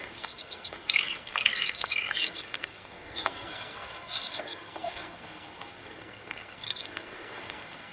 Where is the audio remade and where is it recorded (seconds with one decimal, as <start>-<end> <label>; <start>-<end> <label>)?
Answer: 0.0-7.9 remade